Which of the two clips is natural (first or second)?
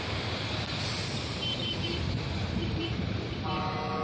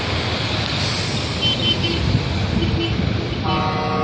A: second